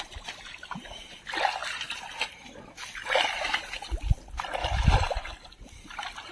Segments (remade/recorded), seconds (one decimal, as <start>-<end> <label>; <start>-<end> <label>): 0.0-6.3 recorded